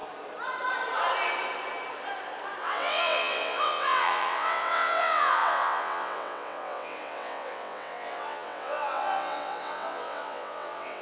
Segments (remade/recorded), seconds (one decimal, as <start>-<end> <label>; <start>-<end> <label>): 0.0-2.6 recorded; 2.6-11.0 remade